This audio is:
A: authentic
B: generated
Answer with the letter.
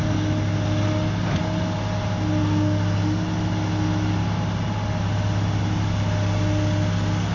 A